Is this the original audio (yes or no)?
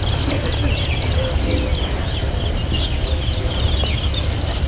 yes